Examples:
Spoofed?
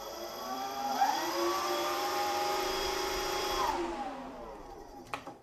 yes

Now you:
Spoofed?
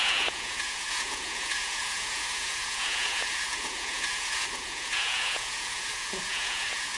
yes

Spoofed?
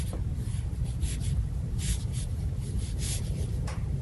yes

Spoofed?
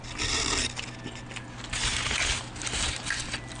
no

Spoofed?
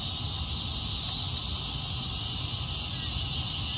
no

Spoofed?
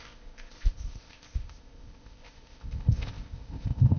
yes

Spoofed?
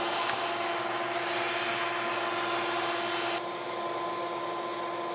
no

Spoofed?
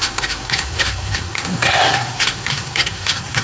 yes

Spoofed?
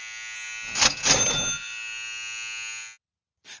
no